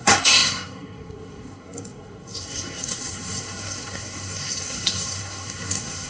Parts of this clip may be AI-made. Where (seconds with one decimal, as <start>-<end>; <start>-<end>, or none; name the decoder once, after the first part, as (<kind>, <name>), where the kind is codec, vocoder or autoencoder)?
0.0-6.1 (codec, SNAC)